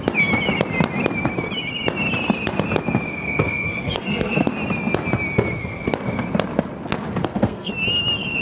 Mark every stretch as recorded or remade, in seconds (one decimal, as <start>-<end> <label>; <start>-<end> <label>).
0.0-3.1 recorded; 3.1-4.5 remade; 4.5-7.2 recorded; 7.2-7.7 remade; 7.7-8.4 recorded